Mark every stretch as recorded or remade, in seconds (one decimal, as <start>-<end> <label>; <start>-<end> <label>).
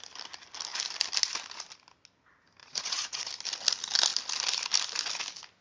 0.0-2.6 recorded; 2.6-3.3 remade; 3.3-5.6 recorded